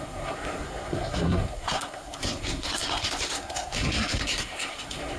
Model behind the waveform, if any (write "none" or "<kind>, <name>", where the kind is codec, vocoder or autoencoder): codec, SNAC